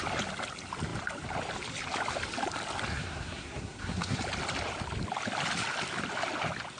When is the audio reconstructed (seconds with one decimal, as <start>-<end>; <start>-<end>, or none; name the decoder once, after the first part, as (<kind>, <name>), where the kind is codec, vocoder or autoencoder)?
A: 2.9-4.2 (codec, SNAC)

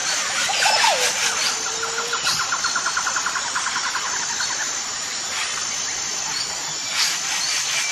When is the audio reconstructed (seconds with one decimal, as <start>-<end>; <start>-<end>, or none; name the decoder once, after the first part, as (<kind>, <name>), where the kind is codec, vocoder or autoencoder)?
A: none